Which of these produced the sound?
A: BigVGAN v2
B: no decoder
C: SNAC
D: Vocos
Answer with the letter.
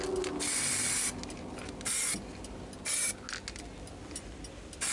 B